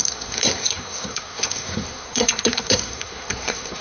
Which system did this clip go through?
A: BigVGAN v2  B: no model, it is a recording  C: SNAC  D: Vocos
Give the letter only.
C